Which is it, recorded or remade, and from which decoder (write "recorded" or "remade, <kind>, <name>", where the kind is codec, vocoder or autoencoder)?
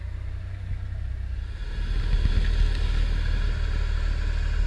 recorded